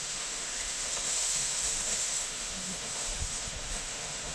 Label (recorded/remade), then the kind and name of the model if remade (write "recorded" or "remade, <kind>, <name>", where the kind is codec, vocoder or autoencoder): remade, autoencoder, DAC-VAE